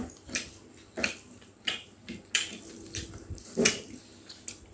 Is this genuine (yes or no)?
yes